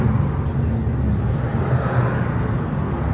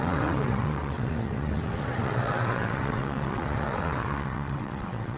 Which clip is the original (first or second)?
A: first